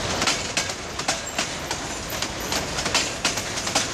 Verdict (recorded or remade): recorded